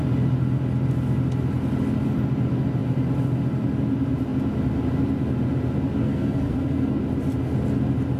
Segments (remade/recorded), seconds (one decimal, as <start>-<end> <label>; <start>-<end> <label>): 0.0-6.0 recorded; 6.0-7.0 remade; 7.0-8.2 recorded